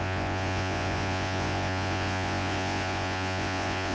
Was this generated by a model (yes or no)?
yes